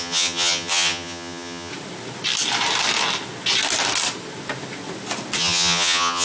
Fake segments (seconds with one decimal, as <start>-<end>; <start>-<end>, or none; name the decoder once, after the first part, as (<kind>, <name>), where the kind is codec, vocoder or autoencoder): 0.0-1.7 (vocoder, HiFi-GAN); 5.4-6.2